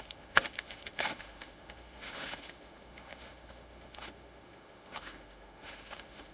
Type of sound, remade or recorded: remade